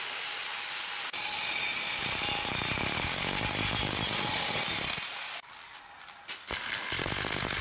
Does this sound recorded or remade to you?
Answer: recorded